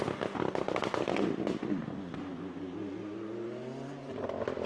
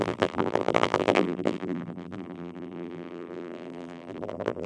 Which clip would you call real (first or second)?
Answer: first